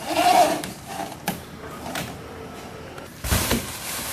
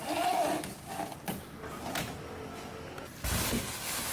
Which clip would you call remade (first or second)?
first